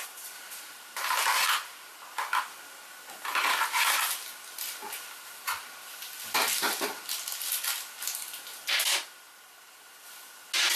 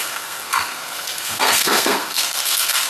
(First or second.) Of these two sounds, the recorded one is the first